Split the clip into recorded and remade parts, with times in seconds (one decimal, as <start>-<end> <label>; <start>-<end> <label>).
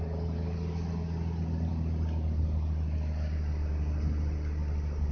0.0-5.1 recorded